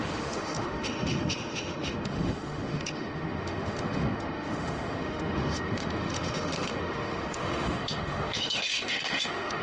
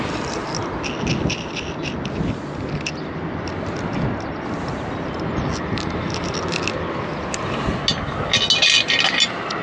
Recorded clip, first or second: second